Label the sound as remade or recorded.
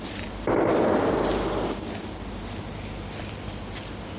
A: recorded